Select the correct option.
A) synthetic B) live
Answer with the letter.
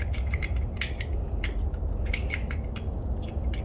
B